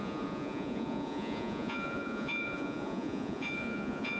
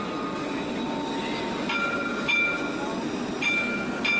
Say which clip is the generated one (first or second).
first